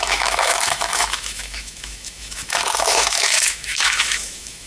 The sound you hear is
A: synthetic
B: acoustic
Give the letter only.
A